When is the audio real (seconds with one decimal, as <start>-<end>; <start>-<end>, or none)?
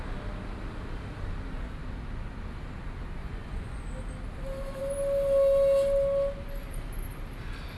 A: 0.0-3.2; 3.8-7.8